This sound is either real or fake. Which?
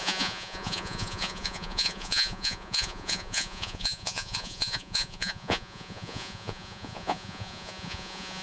fake